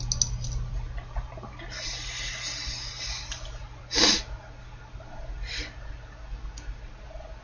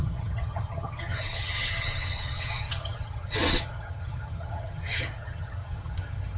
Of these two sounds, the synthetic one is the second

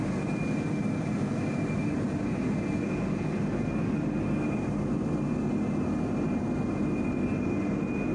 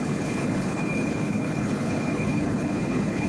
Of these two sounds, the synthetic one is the second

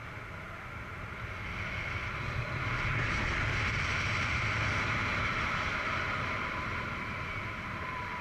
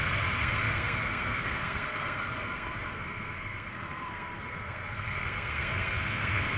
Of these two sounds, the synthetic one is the second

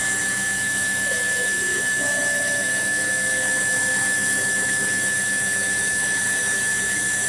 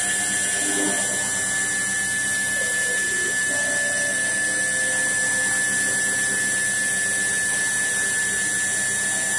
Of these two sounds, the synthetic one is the first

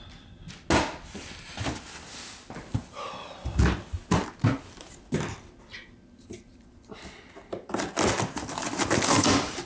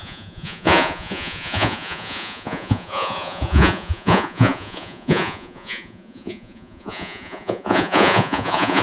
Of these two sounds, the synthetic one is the second